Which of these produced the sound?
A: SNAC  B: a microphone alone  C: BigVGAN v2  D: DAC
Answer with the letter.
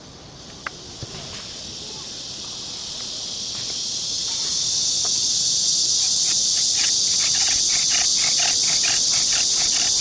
B